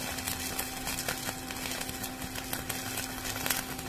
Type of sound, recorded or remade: recorded